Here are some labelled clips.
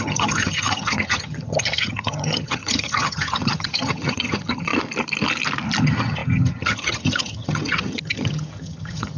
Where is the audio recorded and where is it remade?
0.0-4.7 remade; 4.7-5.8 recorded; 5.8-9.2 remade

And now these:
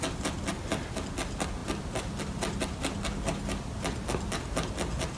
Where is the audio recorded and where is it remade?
0.0-5.2 recorded

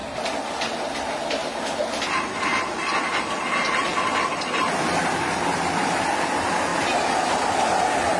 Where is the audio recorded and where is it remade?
0.0-8.2 recorded

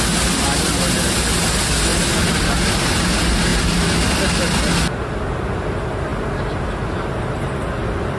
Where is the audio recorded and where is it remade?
0.0-8.2 recorded

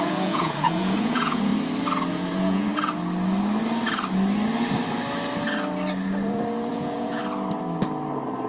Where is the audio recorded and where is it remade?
0.0-1.5 remade; 1.5-2.1 recorded; 2.1-2.7 remade; 2.7-6.7 recorded; 6.7-7.2 remade; 7.2-8.5 recorded

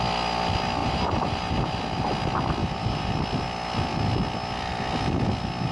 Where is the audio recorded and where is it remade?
0.0-0.8 recorded; 0.8-2.1 remade; 2.1-2.6 recorded; 2.6-3.1 remade; 3.1-5.7 recorded